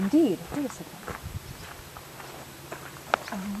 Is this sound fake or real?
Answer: real